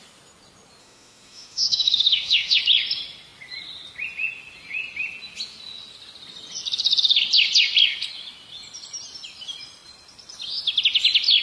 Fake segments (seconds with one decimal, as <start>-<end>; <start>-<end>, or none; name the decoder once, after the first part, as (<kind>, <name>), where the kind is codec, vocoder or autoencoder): 0.8-2.6 (autoencoder, DAC-VAE)